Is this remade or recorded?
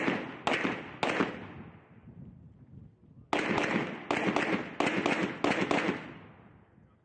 recorded